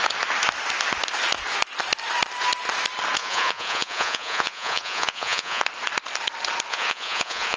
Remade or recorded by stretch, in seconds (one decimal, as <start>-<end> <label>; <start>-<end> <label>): 0.0-3.2 recorded; 3.2-5.6 remade; 5.6-6.7 recorded; 6.7-7.6 remade